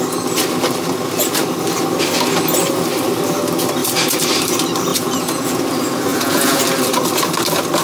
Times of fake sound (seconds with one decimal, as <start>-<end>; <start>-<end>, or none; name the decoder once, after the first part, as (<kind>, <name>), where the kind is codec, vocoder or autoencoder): 4.9-5.6 (vocoder, Vocos); 6.1-6.6